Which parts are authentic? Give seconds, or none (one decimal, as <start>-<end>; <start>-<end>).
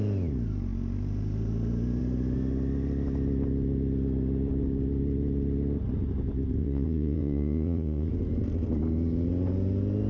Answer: 0.0-6.6; 8.1-10.1